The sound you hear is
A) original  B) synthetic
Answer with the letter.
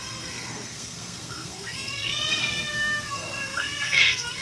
B